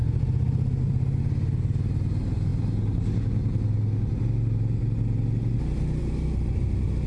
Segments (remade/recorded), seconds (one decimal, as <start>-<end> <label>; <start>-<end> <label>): 0.0-7.1 recorded